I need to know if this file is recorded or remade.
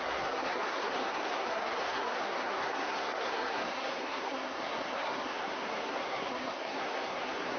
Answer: remade